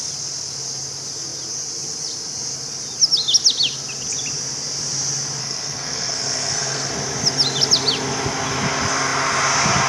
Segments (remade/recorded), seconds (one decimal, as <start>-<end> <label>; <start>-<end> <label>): 0.0-5.4 recorded; 5.4-6.9 remade; 6.9-9.9 recorded